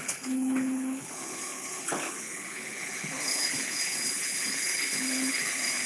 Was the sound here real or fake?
fake